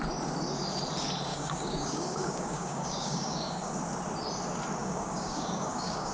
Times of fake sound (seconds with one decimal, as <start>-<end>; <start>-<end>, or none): 1.3-3.7; 4.8-6.1